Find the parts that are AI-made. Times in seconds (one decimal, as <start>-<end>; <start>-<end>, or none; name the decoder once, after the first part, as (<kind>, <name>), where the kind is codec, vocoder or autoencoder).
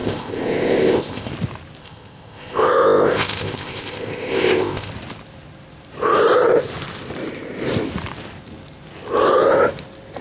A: 0.0-1.3 (codec, ZipCodec); 1.8-4.9